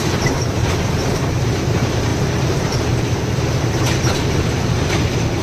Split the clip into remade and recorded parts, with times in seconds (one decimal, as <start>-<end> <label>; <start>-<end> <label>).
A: 0.0-5.4 remade